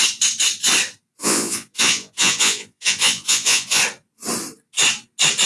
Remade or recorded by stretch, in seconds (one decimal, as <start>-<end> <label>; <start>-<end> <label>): 0.0-1.2 recorded; 1.2-3.8 remade; 3.8-5.5 recorded